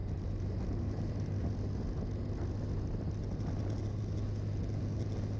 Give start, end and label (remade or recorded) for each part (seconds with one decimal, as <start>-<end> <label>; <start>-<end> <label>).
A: 0.0-1.5 remade; 1.5-5.4 recorded